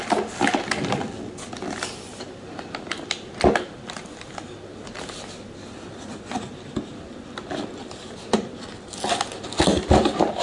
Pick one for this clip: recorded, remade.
recorded